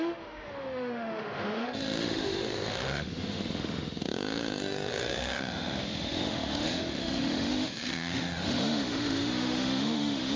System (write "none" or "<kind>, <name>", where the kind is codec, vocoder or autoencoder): autoencoder, DAC-VAE